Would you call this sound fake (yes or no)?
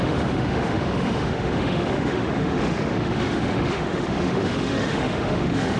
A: yes